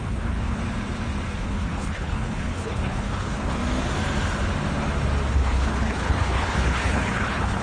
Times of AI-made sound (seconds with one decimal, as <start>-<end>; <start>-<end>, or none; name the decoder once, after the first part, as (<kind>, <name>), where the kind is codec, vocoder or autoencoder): 0.0-0.6 (codec, HILCodec); 1.4-3.6; 5.3-7.6